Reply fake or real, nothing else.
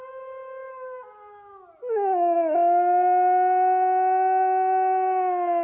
real